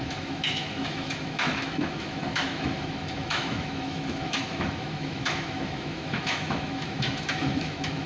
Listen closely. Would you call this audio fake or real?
fake